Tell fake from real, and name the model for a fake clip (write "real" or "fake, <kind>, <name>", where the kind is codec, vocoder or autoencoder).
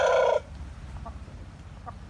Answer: fake, vocoder, BigVGAN v2